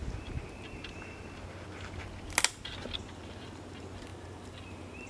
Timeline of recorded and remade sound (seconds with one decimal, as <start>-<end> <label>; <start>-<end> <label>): 0.0-4.1 recorded; 4.1-5.1 remade